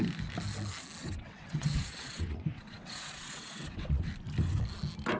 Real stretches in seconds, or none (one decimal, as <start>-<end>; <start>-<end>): 0.0-1.0; 4.1-5.2